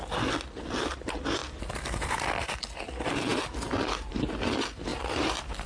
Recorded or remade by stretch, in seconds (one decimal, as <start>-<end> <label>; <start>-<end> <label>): 0.0-1.4 recorded; 1.4-2.6 remade; 2.6-3.3 recorded; 3.3-4.1 remade; 4.1-4.9 recorded; 4.9-5.7 remade